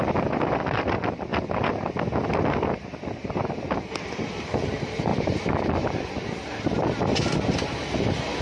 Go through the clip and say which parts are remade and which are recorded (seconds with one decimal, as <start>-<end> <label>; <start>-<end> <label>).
0.0-8.4 recorded